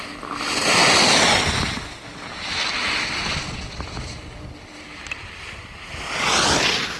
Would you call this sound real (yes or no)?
yes